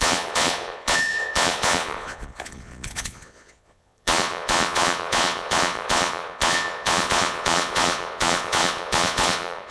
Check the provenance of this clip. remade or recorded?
remade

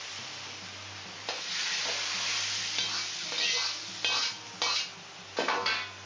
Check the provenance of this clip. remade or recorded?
recorded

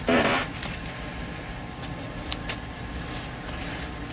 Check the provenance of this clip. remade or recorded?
recorded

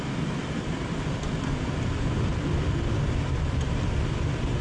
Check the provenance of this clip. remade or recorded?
remade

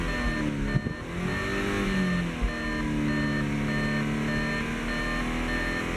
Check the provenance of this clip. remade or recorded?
recorded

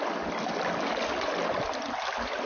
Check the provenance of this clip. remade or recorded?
recorded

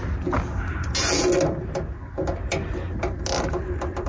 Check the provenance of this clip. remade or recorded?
recorded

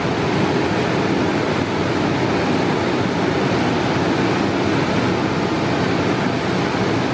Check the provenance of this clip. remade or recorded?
recorded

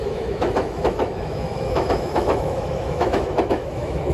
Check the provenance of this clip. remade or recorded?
remade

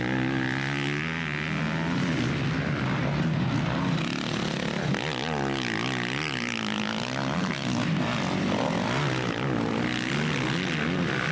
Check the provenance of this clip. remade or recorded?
recorded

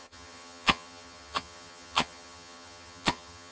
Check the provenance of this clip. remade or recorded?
remade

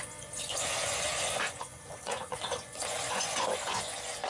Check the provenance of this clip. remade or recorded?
remade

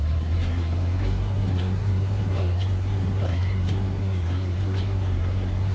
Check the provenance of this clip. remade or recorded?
remade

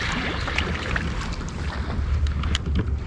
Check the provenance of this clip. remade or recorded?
recorded